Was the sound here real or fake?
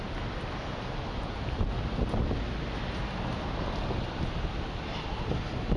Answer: real